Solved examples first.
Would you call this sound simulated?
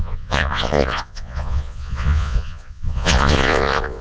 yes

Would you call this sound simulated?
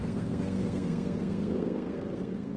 yes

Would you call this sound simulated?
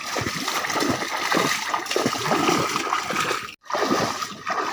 no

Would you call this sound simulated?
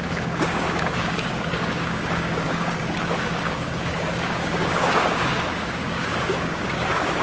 yes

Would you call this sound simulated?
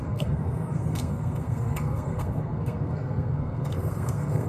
yes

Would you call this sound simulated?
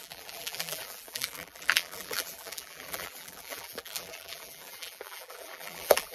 yes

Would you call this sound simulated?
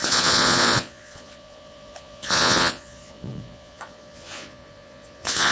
yes